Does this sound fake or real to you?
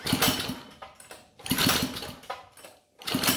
real